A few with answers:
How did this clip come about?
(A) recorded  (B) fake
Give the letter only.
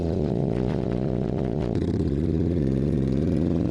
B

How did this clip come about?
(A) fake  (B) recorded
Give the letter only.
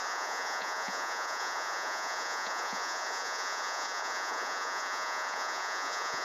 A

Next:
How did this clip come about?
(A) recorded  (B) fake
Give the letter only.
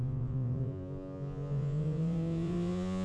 B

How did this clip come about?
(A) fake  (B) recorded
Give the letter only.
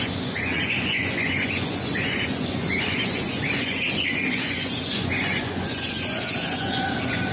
A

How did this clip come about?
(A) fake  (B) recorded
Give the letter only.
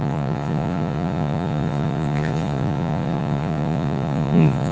A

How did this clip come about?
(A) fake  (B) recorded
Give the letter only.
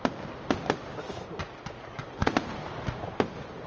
B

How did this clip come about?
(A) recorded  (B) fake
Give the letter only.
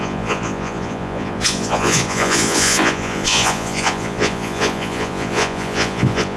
B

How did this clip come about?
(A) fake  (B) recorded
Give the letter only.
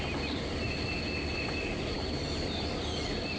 B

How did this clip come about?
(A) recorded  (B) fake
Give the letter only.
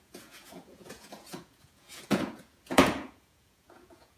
B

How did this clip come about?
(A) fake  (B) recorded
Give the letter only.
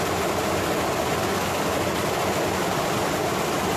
B